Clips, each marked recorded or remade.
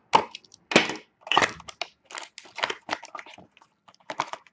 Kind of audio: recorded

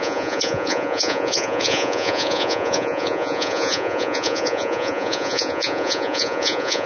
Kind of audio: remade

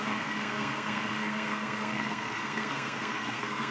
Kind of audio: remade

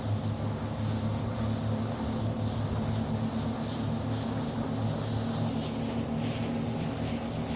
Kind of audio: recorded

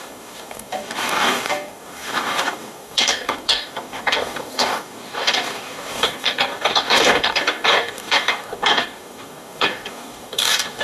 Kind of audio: remade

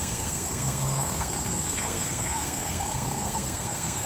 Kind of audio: remade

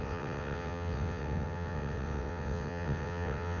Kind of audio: remade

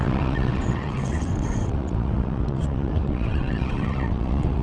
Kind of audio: remade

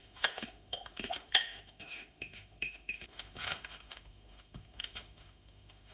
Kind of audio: remade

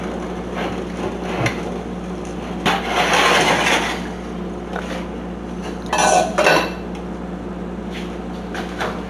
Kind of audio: recorded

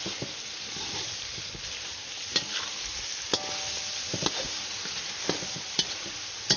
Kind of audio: recorded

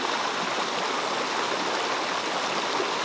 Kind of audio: recorded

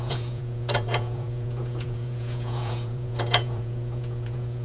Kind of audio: remade